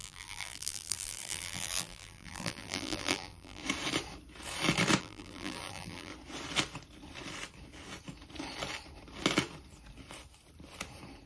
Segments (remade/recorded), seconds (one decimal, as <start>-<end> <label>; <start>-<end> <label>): 0.0-3.6 remade; 3.6-5.0 recorded; 5.0-6.1 remade; 6.1-11.3 recorded